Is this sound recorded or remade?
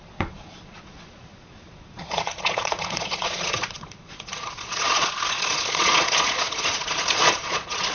remade